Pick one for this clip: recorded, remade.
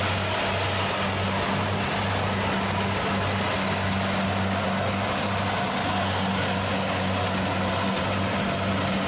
recorded